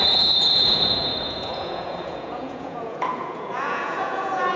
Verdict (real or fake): fake